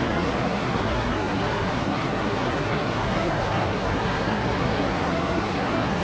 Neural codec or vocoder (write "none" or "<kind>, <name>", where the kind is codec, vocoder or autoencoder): codec, SNAC